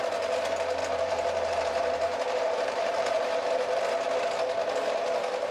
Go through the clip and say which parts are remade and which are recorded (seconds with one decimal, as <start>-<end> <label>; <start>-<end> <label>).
0.0-0.8 recorded; 0.8-3.8 remade; 3.8-5.5 recorded

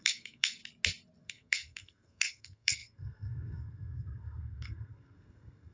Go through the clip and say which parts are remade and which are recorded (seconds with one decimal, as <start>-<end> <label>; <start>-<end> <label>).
0.0-0.6 remade; 0.6-1.2 recorded; 1.2-5.7 remade

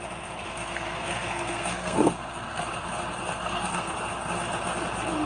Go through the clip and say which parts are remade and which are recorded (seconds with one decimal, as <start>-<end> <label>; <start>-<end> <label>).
0.0-0.5 recorded; 0.5-2.6 remade; 2.6-3.4 recorded; 3.4-3.9 remade; 3.9-5.3 recorded

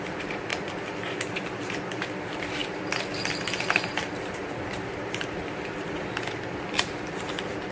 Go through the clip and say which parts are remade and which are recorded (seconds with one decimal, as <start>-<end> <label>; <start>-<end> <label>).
0.0-7.7 remade

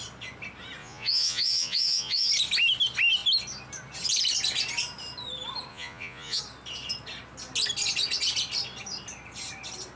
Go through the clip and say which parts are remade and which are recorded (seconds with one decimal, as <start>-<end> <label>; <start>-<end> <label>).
0.0-0.8 recorded; 0.8-2.3 remade; 2.3-5.7 recorded; 5.7-6.4 remade; 6.4-10.0 recorded

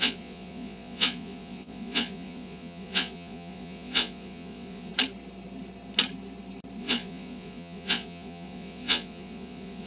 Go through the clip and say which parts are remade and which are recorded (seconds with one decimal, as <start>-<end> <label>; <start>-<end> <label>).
0.0-4.9 remade; 4.9-6.8 recorded; 6.8-9.9 remade

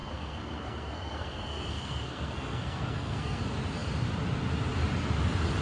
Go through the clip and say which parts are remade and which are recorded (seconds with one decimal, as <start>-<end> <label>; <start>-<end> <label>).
0.0-3.4 remade; 3.4-5.6 recorded